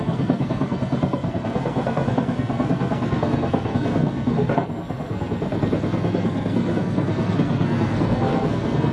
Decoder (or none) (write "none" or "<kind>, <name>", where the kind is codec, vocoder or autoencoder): codec, SNAC